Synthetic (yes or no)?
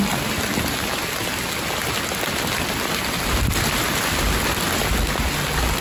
no